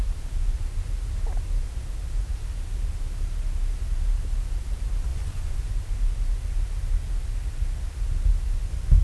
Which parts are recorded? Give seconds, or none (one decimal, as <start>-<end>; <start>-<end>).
0.0-5.1; 5.7-9.0